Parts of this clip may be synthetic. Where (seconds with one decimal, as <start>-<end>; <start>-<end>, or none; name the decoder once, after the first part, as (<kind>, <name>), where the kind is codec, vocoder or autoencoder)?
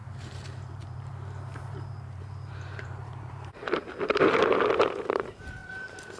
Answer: 0.0-1.1 (vocoder, BigVGAN v2); 1.5-4.2